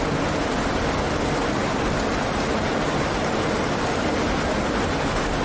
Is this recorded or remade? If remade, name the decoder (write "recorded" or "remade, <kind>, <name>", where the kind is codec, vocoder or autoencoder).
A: recorded